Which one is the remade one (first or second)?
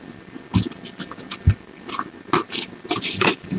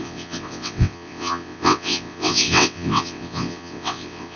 second